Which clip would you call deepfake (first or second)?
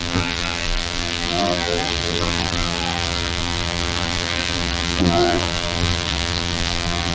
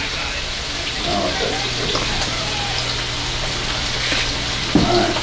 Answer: first